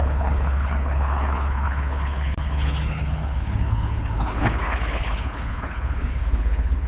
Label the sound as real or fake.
fake